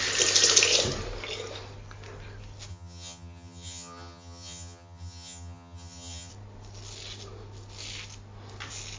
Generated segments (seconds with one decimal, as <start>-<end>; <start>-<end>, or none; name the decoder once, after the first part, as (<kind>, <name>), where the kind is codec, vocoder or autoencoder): 2.7-6.3 (vocoder, HiFi-GAN)